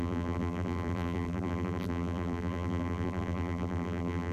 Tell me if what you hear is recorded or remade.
remade